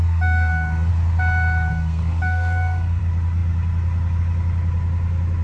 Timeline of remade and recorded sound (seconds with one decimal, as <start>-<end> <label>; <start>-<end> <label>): 0.0-0.9 remade; 0.9-1.7 recorded; 1.7-3.0 remade; 3.0-5.4 recorded

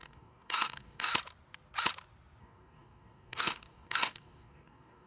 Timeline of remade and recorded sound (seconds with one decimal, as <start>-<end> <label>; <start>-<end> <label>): 0.0-1.1 remade; 1.1-2.4 recorded; 2.4-5.1 remade

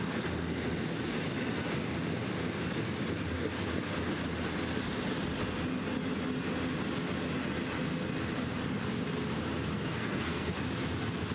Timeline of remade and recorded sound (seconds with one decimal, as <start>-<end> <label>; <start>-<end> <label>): 0.0-9.7 recorded; 9.7-10.5 remade; 10.5-11.3 recorded

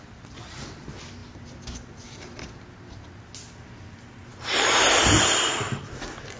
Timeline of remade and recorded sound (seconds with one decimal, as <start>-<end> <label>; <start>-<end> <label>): 0.0-6.4 recorded

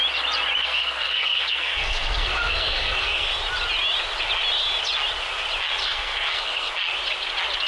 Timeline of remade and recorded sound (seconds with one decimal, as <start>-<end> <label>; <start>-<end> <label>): 0.0-0.6 recorded; 0.6-3.3 remade; 3.3-5.8 recorded; 5.8-6.7 remade; 6.7-7.7 recorded

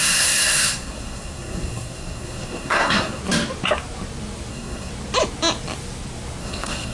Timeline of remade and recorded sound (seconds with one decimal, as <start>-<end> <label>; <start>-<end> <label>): 0.0-3.2 remade; 3.2-4.5 recorded; 4.5-4.9 remade; 4.9-6.4 recorded; 6.4-6.9 remade